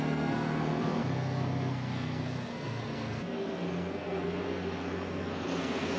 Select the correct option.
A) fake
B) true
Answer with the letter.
A